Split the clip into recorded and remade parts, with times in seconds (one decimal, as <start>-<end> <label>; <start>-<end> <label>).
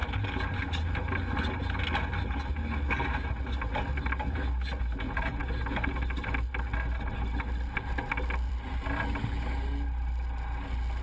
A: 0.0-11.0 recorded